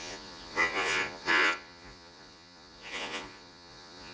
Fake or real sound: fake